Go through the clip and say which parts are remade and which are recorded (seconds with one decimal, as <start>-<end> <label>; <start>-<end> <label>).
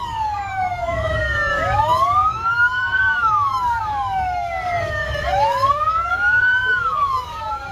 0.0-7.7 remade